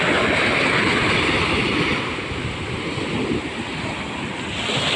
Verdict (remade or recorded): recorded